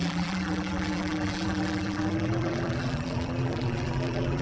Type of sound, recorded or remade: remade